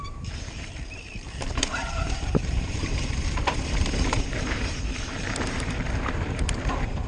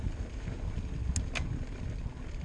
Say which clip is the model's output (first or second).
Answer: first